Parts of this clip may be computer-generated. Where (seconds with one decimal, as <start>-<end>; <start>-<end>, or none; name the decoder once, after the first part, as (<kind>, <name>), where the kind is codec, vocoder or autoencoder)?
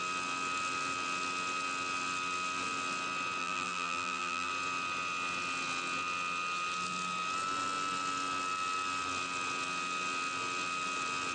3.4-4.5 (vocoder, BigVGAN v2)